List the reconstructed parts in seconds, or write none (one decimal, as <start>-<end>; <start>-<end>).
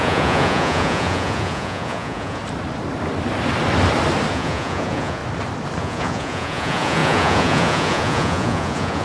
0.0-2.4; 4.3-5.2; 5.8-9.0